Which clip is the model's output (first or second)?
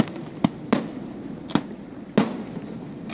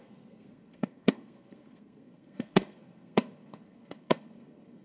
second